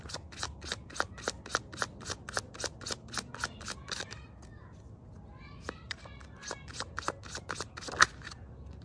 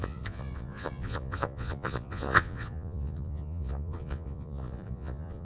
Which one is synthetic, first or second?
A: second